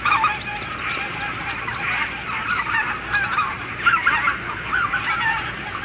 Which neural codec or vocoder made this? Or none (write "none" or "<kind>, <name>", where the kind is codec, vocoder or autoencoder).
vocoder, BigVGAN v2